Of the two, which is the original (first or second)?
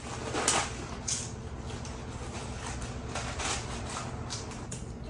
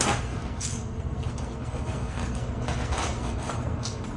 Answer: first